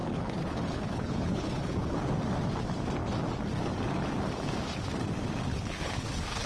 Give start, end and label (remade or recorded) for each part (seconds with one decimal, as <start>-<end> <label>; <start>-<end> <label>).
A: 0.0-2.0 remade; 2.0-5.5 recorded; 5.5-6.5 remade